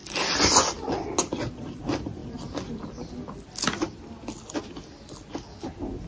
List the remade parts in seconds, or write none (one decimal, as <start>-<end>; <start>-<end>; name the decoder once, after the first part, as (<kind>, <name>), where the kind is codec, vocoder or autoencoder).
none